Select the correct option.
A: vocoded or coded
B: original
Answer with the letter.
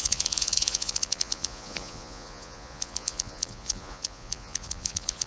A